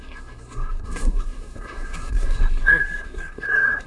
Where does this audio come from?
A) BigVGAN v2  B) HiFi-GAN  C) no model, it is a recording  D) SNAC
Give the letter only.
D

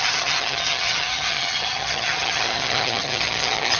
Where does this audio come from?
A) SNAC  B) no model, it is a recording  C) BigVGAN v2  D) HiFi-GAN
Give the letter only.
D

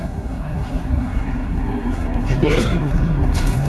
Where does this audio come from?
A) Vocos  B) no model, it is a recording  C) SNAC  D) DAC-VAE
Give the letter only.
C